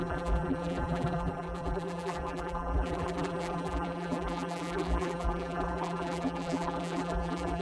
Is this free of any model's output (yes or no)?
no